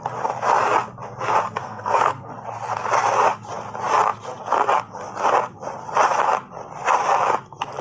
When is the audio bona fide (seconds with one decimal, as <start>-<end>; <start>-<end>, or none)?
0.0-1.6; 2.3-7.8